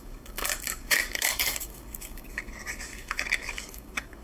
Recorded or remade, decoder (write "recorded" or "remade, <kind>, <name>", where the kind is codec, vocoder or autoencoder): remade, codec, DAC